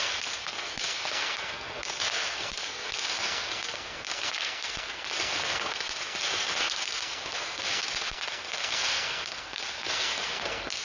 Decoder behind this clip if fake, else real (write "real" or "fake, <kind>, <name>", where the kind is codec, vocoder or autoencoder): fake, codec, SNAC